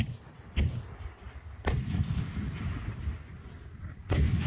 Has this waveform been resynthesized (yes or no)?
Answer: no